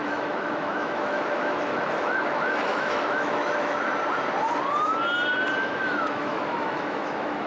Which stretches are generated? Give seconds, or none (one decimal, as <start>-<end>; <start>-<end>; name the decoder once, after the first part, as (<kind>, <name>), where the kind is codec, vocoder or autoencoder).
0.0-3.9 (autoencoder, DAC-VAE); 5.6-7.5